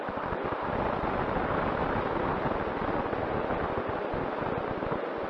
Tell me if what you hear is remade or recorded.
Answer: recorded